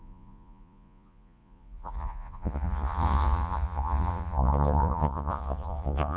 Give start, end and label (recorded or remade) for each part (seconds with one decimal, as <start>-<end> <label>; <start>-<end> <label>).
0.0-6.2 remade